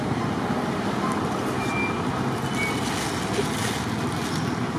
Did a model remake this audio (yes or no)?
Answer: no